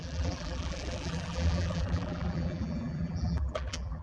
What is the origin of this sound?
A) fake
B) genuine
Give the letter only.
A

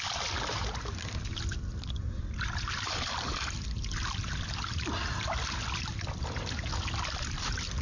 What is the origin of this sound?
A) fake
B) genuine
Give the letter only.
B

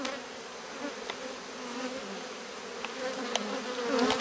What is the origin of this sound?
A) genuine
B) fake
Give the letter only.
A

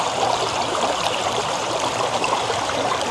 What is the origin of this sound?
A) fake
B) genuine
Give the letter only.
A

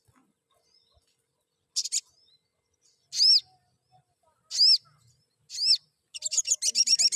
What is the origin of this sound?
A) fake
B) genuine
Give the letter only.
B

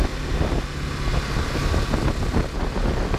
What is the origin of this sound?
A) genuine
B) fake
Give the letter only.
A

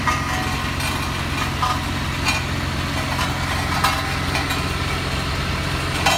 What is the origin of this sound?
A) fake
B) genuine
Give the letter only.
B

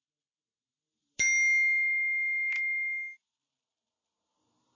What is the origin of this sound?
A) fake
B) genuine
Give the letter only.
B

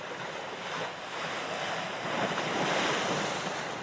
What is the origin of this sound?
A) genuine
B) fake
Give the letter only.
A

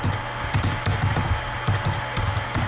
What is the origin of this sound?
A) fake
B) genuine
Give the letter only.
B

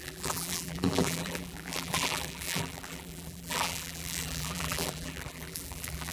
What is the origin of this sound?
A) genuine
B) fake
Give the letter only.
B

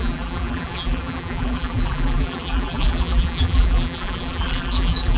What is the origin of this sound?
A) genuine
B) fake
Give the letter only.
B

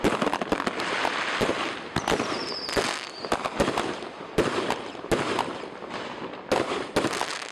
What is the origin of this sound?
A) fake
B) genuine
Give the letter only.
B